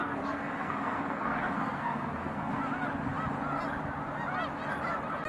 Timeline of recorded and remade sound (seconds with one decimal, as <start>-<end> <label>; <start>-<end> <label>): 0.0-2.6 remade; 2.6-5.3 recorded